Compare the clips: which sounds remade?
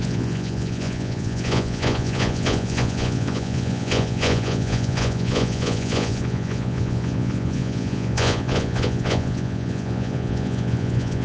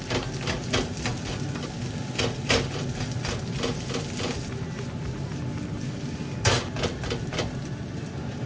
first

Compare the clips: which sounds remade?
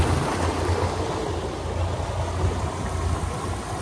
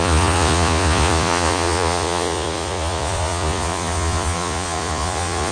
second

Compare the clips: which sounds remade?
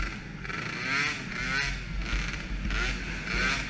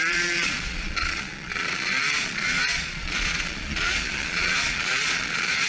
second